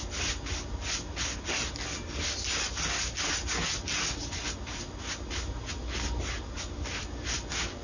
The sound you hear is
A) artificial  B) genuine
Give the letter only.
B